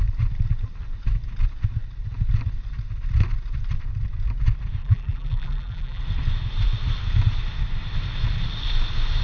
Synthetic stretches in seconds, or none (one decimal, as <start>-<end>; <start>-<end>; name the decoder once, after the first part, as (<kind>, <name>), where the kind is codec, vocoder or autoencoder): 4.8-6.0 (vocoder, BigVGAN v2)